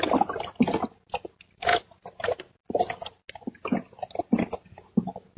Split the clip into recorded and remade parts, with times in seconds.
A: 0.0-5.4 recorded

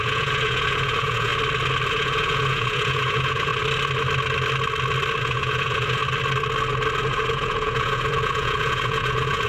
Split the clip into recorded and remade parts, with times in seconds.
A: 0.0-1.3 remade; 1.3-1.9 recorded; 1.9-3.5 remade; 3.5-5.2 recorded; 5.2-6.0 remade; 6.0-7.0 recorded; 7.0-9.5 remade

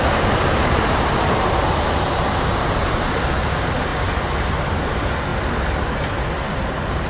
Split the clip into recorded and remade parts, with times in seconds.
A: 0.0-3.9 remade; 3.9-4.6 recorded; 4.6-5.3 remade; 5.3-6.6 recorded; 6.6-7.1 remade